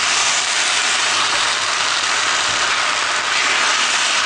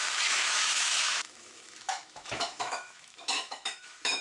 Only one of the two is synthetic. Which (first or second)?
second